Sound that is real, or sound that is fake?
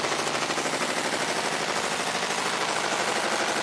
real